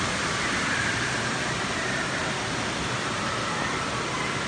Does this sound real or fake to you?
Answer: real